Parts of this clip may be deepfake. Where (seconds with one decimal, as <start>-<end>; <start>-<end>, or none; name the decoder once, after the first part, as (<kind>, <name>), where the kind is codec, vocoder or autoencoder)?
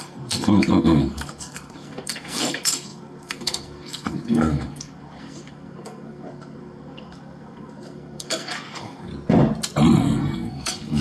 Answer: 0.0-9.1 (codec, SNAC); 10.0-11.0